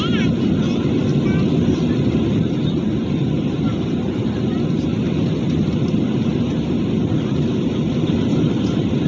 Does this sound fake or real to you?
real